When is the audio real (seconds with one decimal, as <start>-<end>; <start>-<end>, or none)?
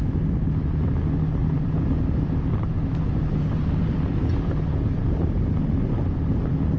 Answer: 0.0-1.4; 5.5-6.8